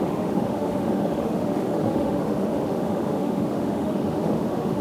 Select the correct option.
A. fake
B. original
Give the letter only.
A